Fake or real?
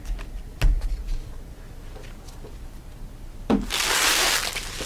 real